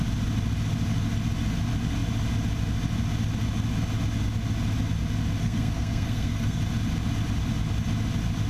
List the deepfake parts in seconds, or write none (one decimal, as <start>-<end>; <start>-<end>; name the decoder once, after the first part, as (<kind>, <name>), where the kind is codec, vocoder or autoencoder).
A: 5.4-6.6 (codec, SNAC)